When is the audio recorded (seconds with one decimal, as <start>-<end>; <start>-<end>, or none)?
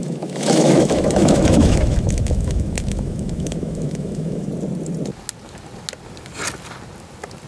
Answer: 4.5-7.5